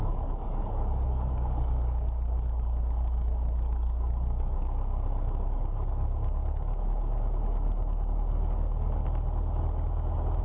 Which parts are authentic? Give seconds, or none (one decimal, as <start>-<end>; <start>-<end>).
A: 9.0-10.4